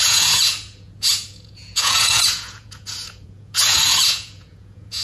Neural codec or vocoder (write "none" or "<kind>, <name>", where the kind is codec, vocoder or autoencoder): vocoder, Vocos